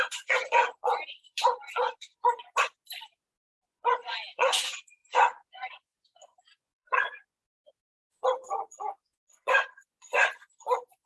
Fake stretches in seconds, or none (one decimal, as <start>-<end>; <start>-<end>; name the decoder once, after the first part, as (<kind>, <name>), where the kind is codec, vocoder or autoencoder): 0.0-2.4 (vocoder, Vocos); 3.3-11.1